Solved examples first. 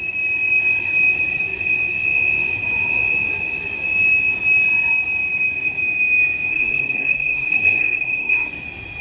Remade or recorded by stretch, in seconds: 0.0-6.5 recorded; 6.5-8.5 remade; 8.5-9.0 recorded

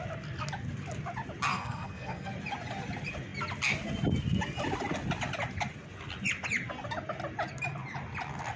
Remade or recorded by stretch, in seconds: 0.0-1.5 recorded; 1.5-2.3 remade; 2.3-8.6 recorded

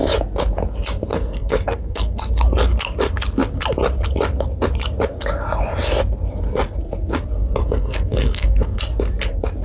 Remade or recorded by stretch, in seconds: 0.0-1.1 recorded; 1.1-2.3 remade; 2.3-7.6 recorded; 7.6-8.8 remade; 8.8-9.6 recorded

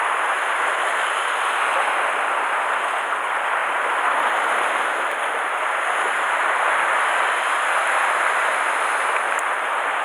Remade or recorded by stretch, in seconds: 0.0-10.0 recorded

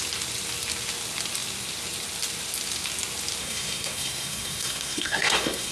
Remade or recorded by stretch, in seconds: 0.0-3.4 recorded; 3.4-5.7 remade

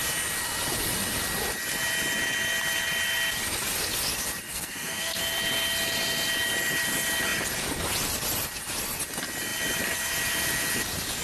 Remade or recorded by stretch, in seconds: 0.0-4.5 recorded; 4.5-5.2 remade; 5.2-11.2 recorded

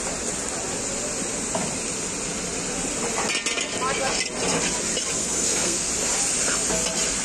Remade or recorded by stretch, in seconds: 0.0-5.2 recorded; 5.2-5.9 remade; 5.9-7.2 recorded

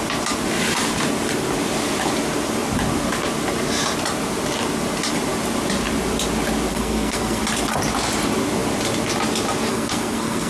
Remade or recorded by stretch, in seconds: 0.0-6.7 recorded; 6.7-7.4 remade; 7.4-9.7 recorded; 9.7-10.5 remade